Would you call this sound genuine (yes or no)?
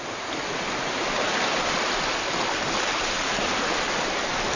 yes